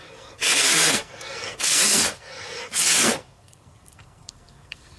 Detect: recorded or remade remade